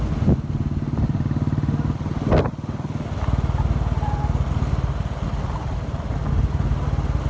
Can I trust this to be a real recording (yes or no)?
yes